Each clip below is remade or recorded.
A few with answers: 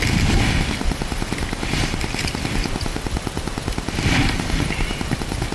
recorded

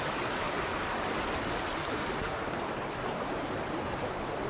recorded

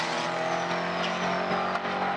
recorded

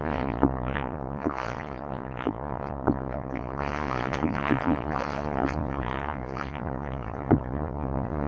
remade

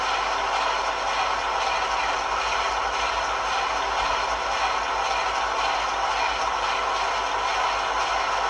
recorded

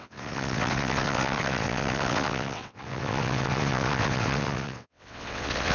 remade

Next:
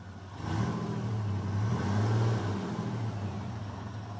recorded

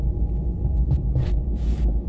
recorded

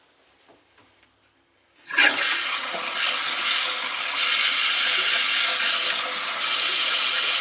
recorded